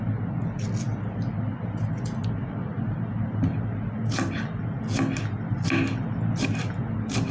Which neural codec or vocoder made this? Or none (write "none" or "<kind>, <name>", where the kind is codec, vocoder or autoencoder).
none